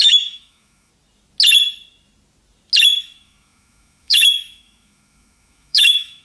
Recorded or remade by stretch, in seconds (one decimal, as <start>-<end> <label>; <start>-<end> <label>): 0.0-0.9 remade; 0.9-2.8 recorded; 2.8-6.2 remade